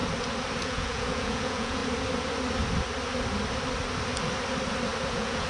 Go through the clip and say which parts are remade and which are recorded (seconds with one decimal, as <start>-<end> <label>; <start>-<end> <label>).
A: 0.0-0.6 recorded; 0.6-1.8 remade; 1.8-5.1 recorded; 5.1-5.5 remade